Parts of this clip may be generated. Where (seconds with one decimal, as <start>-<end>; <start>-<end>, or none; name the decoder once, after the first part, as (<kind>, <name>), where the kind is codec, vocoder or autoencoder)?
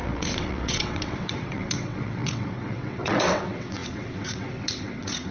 0.0-5.3 (vocoder, WaveNeXt)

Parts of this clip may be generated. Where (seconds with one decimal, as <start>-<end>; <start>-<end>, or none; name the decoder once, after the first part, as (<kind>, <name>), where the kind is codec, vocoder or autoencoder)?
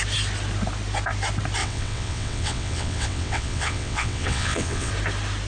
1.6-4.9 (vocoder, WaveNeXt)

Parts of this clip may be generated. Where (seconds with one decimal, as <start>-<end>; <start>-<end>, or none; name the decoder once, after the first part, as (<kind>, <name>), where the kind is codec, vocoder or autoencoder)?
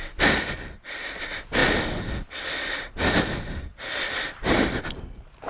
none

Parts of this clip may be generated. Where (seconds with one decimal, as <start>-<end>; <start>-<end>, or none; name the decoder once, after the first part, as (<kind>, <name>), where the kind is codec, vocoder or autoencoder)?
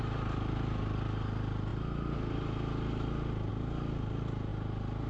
none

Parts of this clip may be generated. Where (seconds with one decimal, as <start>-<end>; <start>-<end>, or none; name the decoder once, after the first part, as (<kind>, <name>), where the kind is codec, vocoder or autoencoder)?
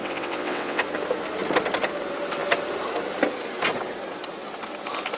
0.0-0.8 (vocoder, WaveNeXt)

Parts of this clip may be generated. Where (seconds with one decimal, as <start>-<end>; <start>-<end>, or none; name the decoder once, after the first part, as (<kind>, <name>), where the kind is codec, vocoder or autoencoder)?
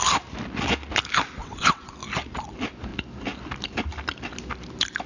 1.4-1.9 (vocoder, WaveNeXt)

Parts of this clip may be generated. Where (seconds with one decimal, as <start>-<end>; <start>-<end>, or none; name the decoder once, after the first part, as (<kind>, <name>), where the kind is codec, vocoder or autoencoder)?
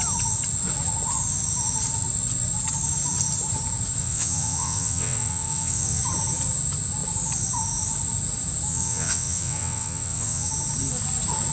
4.0-6.0 (vocoder, WaveNeXt); 8.7-10.5